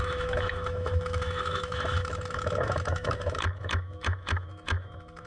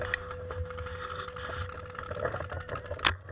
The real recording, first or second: second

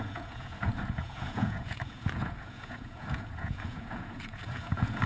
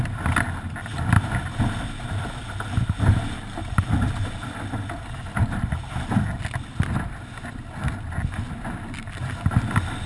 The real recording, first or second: second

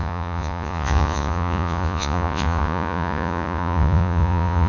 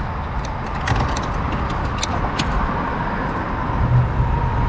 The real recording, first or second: second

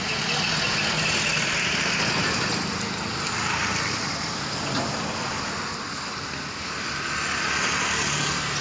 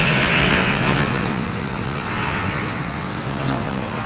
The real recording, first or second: first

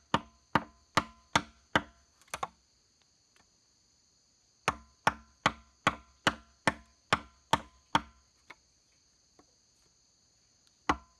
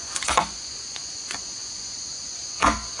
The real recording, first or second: first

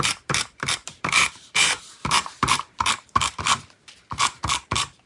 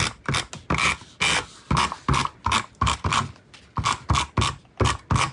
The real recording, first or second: second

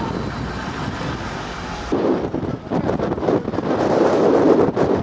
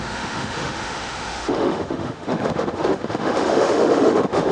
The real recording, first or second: first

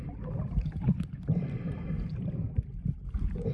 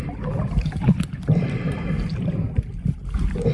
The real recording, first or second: second